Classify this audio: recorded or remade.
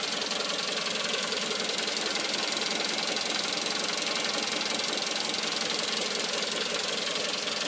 recorded